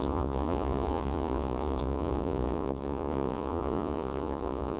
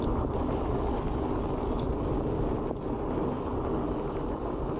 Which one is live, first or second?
second